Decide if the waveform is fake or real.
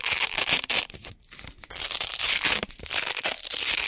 real